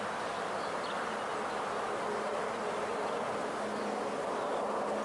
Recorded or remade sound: recorded